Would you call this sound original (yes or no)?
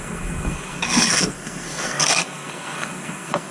no